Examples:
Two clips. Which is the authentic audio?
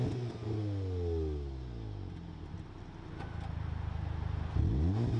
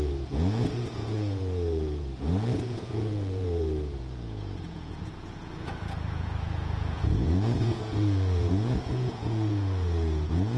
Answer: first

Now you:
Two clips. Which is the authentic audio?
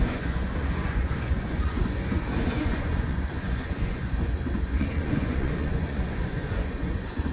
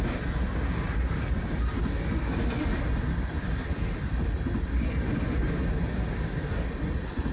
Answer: second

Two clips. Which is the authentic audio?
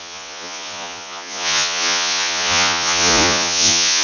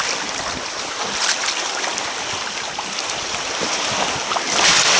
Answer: second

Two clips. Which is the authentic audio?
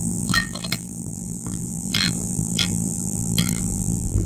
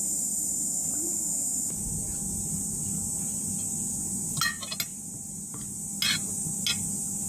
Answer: second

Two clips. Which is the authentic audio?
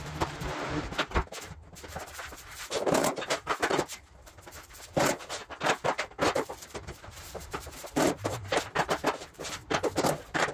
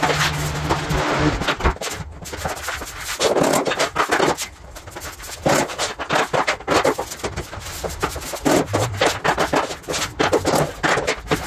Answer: second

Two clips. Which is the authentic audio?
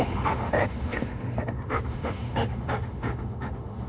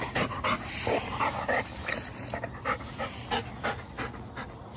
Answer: second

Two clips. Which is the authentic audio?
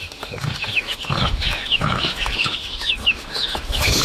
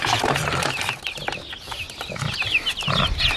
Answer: second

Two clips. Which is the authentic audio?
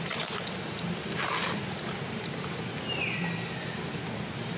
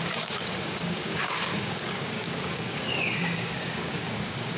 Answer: first